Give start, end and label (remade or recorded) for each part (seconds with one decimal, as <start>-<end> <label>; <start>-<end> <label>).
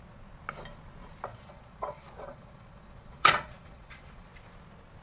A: 0.0-1.3 recorded; 1.3-4.3 remade; 4.3-5.0 recorded